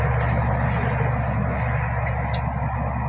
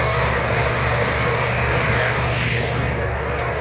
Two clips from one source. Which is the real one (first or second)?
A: first